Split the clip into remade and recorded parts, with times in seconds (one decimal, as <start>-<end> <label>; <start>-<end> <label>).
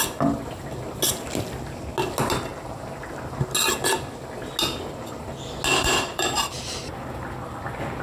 0.0-5.8 recorded; 5.8-6.9 remade; 6.9-8.0 recorded